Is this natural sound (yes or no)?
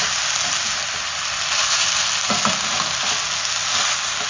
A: yes